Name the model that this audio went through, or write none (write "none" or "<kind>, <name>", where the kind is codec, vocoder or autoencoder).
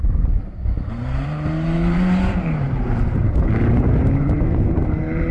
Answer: vocoder, BigVGAN v2